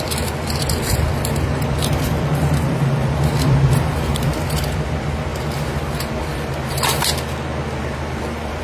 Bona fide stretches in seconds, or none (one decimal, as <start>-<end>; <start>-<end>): 5.3-7.8